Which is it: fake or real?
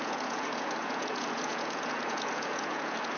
fake